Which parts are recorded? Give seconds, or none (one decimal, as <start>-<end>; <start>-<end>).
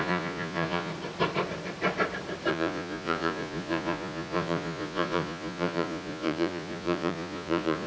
0.9-2.5